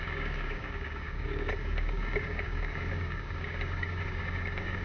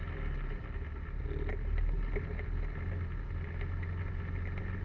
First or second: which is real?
second